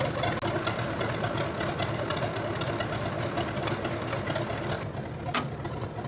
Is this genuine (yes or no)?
yes